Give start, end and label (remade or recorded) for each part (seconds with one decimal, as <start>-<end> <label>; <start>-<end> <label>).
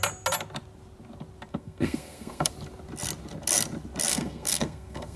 0.0-1.5 recorded; 1.5-2.5 remade; 2.5-4.1 recorded; 4.1-5.2 remade